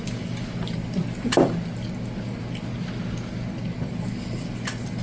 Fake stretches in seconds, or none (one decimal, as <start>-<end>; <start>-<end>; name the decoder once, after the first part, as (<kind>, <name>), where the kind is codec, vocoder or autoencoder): none